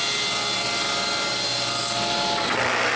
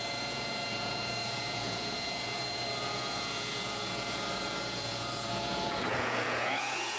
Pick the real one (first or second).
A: first